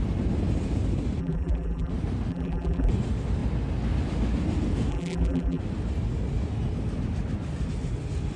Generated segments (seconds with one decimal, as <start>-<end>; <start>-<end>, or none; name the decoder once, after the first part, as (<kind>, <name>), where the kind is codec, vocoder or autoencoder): 1.2-1.9 (vocoder, BigVGAN v2); 2.3-2.9; 4.9-5.6